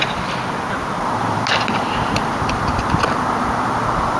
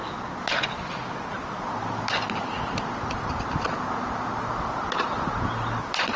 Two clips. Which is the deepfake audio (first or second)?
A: first